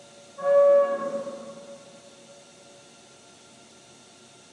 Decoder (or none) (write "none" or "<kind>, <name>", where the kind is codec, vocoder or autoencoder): none